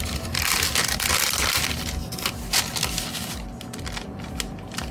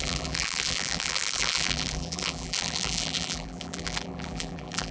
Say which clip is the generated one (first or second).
second